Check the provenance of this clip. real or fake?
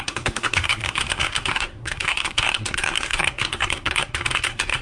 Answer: fake